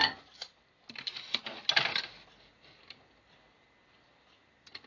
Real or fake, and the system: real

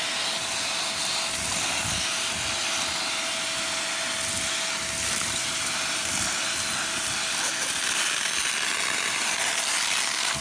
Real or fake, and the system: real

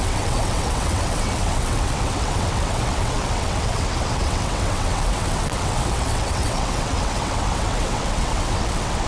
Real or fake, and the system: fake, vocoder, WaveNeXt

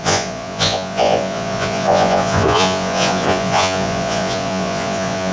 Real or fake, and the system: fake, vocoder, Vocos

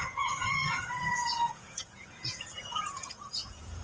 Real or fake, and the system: fake, vocoder, Vocos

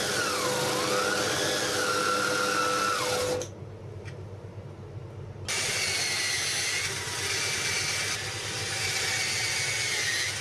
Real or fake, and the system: real